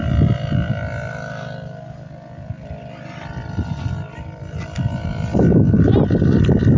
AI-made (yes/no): no